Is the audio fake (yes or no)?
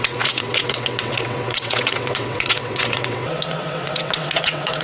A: yes